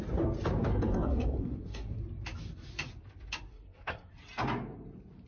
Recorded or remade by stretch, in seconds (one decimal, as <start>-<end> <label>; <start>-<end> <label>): 0.0-0.7 recorded; 0.7-2.0 remade; 2.0-3.5 recorded; 3.5-4.1 remade; 4.1-5.3 recorded